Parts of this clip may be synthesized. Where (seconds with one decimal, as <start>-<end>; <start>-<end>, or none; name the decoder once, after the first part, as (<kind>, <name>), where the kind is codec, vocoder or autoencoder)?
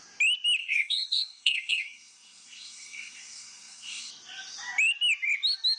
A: 0.6-4.1 (codec, SNAC)